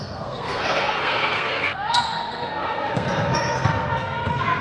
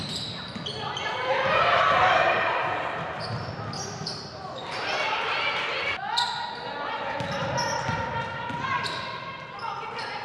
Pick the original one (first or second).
second